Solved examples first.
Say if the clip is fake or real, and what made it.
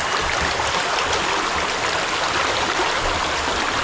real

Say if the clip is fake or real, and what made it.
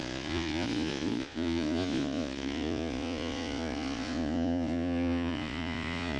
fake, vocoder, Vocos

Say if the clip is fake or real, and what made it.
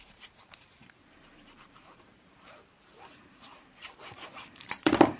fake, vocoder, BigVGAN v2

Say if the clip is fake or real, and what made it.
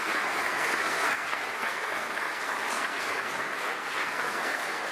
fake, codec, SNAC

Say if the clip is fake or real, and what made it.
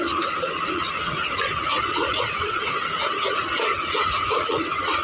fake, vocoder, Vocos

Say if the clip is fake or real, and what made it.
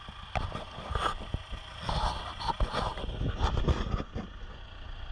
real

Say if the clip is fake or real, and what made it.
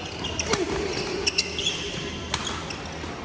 real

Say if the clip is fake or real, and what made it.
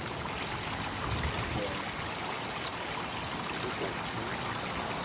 real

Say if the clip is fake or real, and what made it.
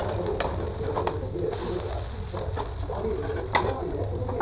real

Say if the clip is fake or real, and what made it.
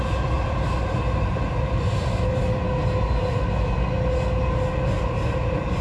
real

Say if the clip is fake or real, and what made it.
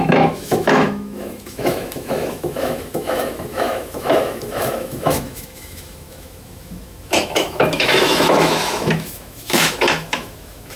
fake, autoencoder, DAC-VAE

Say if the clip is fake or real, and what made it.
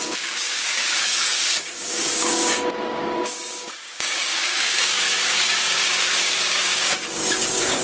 fake, codec, DAC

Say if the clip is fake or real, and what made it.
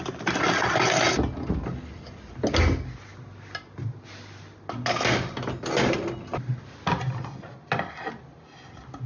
real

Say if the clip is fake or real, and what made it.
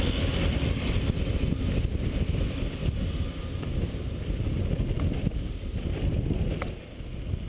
real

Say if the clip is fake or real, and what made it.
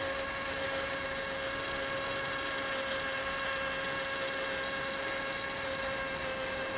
real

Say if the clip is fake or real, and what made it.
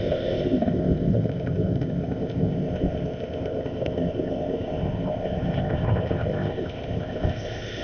fake, codec, ZipCodec